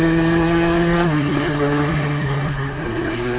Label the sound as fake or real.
fake